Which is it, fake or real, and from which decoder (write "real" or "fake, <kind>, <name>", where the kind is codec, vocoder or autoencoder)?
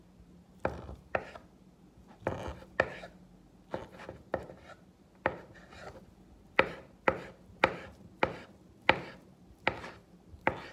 real